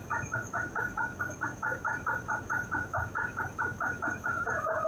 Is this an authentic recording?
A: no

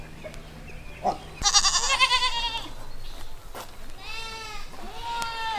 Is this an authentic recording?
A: yes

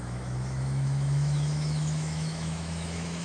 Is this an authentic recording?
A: no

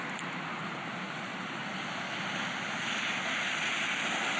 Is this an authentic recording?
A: yes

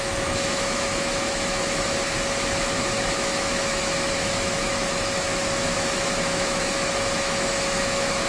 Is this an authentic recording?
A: no